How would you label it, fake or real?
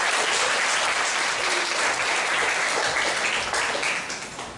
real